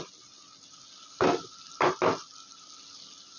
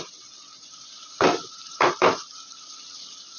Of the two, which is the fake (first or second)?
second